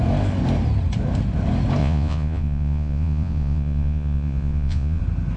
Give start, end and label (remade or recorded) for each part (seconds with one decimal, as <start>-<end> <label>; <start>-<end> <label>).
0.0-1.8 recorded; 1.8-5.0 remade; 5.0-5.4 recorded